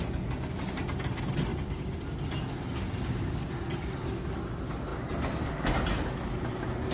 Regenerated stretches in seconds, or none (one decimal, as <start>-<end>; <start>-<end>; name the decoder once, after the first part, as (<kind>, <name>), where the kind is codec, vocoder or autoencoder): none